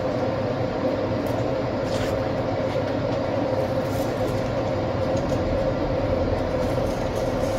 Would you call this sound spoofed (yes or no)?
yes